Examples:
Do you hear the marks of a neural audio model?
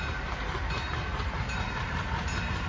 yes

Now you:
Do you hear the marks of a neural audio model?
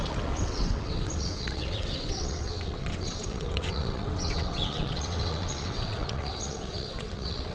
yes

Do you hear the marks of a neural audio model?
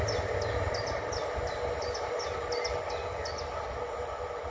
no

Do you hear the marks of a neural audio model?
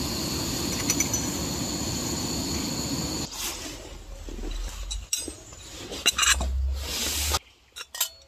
no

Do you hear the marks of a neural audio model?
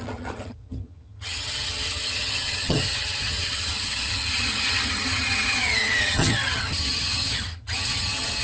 yes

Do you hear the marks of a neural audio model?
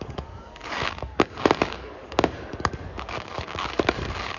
yes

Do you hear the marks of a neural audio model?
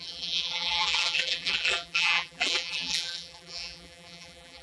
yes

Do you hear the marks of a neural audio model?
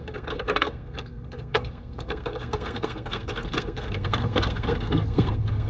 yes